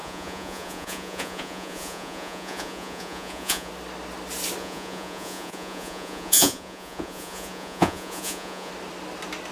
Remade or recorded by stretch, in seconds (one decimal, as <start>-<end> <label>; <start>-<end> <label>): 0.0-3.7 remade; 3.7-4.6 recorded; 4.6-8.7 remade; 8.7-9.5 recorded